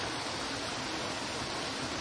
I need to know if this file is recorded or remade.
recorded